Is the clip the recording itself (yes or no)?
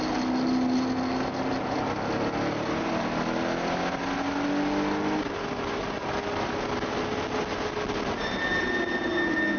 yes